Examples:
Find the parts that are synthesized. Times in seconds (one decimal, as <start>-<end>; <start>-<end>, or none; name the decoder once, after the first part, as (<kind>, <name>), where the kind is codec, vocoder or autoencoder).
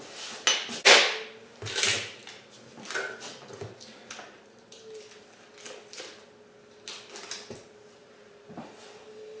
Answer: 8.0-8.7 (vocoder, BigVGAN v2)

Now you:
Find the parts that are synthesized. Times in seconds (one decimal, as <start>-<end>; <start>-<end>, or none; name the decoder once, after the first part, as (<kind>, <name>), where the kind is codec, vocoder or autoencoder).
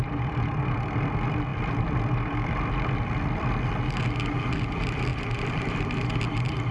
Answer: 1.5-3.8 (vocoder, BigVGAN v2); 5.1-6.7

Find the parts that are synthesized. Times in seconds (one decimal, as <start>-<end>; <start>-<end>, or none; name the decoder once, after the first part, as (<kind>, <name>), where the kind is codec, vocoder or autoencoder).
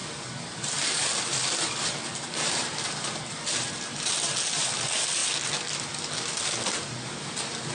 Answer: 0.0-5.2 (vocoder, BigVGAN v2); 6.4-7.7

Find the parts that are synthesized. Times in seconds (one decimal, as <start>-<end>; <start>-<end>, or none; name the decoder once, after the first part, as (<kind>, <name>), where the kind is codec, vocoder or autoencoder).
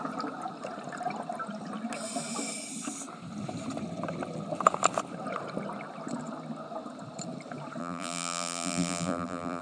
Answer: 7.8-9.6 (vocoder, BigVGAN v2)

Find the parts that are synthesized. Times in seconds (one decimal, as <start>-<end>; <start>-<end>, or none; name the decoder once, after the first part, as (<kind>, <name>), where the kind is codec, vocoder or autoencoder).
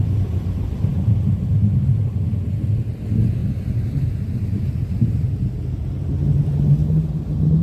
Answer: 0.9-2.3 (vocoder, BigVGAN v2)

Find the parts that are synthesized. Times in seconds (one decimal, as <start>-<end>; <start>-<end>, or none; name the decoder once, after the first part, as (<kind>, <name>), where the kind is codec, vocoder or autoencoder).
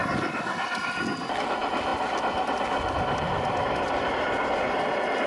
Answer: none